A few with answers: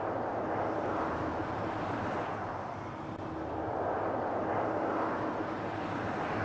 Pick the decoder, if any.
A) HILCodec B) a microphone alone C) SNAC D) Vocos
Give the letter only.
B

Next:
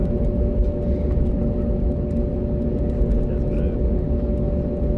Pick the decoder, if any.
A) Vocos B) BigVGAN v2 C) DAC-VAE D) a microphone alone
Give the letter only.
D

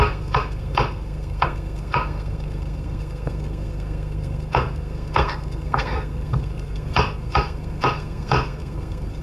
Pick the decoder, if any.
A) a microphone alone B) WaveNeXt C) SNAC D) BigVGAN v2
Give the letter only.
C